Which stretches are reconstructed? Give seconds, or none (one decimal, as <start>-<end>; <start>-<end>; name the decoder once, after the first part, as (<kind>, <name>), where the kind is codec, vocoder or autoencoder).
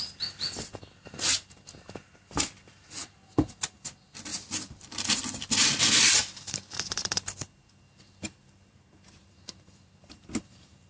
4.3-8.7 (vocoder, BigVGAN v2)